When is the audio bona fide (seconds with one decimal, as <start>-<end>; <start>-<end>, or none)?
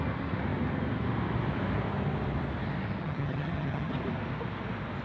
0.0-3.0; 3.9-5.0